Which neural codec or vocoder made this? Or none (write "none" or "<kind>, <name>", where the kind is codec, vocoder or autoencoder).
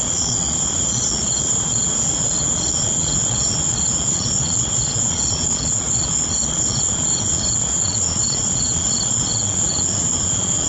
vocoder, Vocos